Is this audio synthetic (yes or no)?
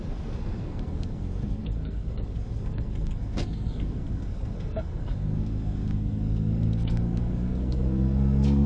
yes